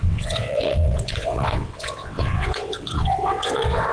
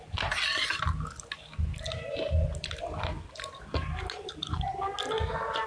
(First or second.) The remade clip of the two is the first